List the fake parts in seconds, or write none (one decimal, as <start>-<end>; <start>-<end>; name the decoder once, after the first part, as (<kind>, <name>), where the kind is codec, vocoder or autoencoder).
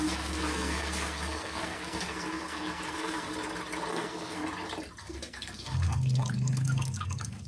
0.0-3.3 (codec, SNAC); 3.9-4.4; 5.0-7.5